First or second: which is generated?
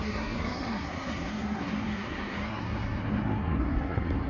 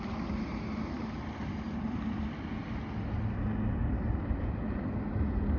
first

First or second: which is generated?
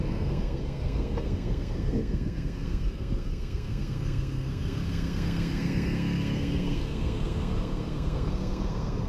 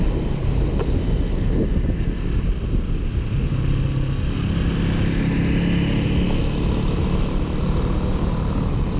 first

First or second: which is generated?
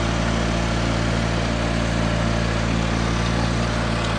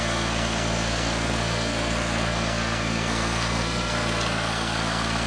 second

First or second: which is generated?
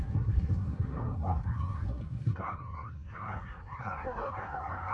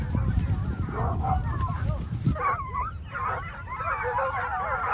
first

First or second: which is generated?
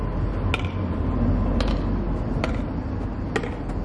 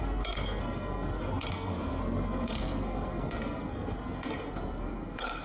second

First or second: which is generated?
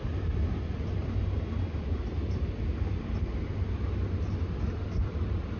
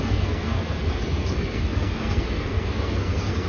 second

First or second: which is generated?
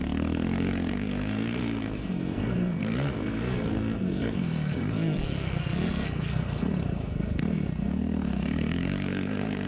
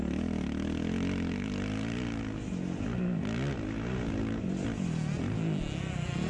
first